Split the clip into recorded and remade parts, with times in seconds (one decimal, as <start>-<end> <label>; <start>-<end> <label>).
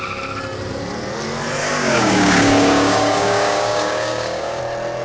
0.0-1.6 recorded; 1.6-4.6 remade; 4.6-5.0 recorded